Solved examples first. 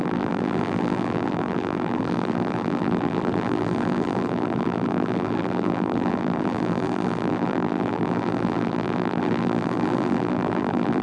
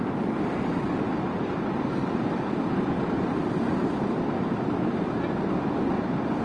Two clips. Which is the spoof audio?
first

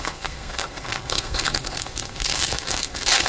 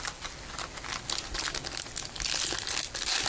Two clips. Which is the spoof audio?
first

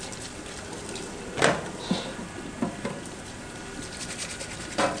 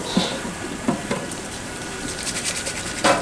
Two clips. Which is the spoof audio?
second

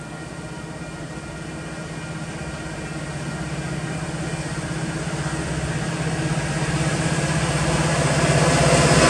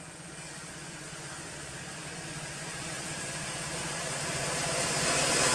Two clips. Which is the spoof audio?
second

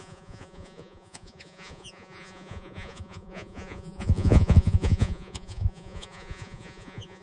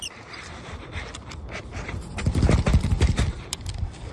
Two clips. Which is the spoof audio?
first